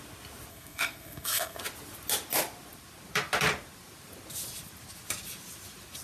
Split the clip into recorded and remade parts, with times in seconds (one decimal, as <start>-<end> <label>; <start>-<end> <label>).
0.0-0.5 recorded; 0.5-1.6 remade; 1.6-6.0 recorded